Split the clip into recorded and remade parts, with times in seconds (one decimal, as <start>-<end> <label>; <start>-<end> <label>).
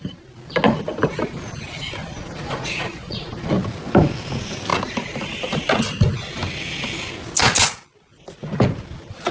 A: 0.0-2.1 recorded; 2.1-3.5 remade; 3.5-9.3 recorded